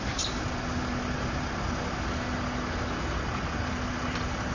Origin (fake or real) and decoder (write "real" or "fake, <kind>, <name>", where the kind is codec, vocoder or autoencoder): real